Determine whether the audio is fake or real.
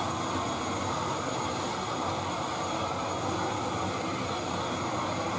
real